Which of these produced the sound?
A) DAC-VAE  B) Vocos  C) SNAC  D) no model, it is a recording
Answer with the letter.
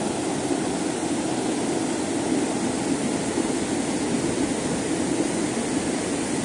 D